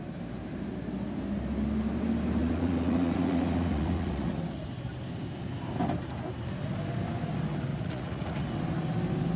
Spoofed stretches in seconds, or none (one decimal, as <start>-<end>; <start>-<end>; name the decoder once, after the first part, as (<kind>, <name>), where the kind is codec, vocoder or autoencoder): 2.4-4.4 (vocoder, Vocos); 7.7-8.5